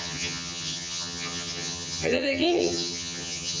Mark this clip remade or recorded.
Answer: remade